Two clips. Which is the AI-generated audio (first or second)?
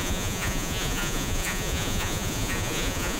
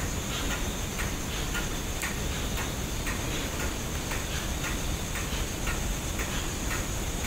first